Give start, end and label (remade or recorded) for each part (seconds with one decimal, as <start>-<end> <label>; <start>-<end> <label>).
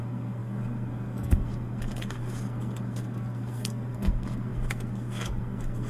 0.0-5.9 remade